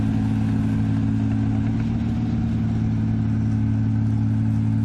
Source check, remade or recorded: recorded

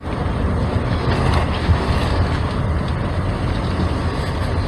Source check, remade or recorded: recorded